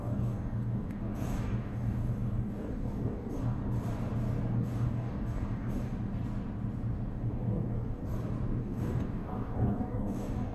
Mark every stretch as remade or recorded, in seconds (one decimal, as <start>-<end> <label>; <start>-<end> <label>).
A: 0.0-3.6 remade; 3.6-4.5 recorded; 4.5-5.9 remade; 5.9-7.1 recorded; 7.1-8.0 remade; 8.0-8.6 recorded; 8.6-10.5 remade